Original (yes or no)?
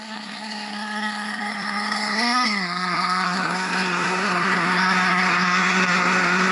no